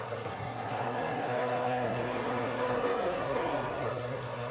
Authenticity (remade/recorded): remade